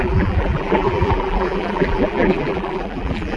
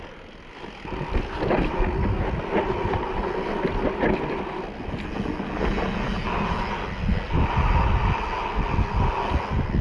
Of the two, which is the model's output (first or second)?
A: first